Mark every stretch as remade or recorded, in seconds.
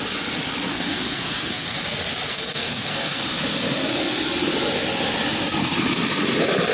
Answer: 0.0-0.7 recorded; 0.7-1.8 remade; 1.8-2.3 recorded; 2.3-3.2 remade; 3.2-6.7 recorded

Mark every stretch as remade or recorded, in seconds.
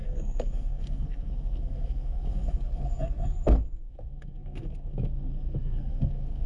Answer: 0.0-6.5 remade